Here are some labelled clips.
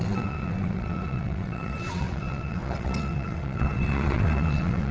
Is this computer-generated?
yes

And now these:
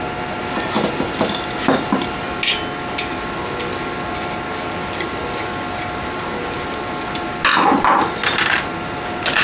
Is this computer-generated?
no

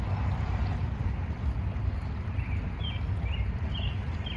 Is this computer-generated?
no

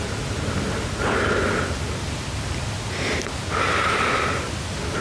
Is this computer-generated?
no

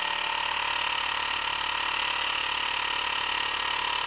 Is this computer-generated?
no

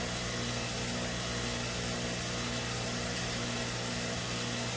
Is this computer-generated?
no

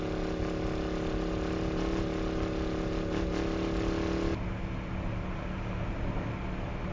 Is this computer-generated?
no